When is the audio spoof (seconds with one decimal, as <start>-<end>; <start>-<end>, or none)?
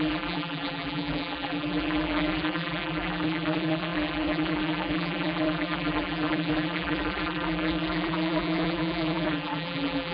0.0-10.1